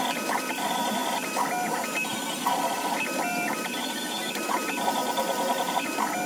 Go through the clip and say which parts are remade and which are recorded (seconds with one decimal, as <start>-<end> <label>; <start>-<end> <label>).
0.0-1.0 remade; 1.0-1.5 recorded; 1.5-5.0 remade; 5.0-6.3 recorded